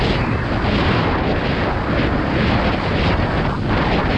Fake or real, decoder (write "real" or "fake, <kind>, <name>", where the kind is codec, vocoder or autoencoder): real